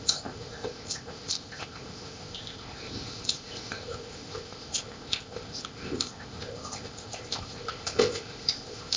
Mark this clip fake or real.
fake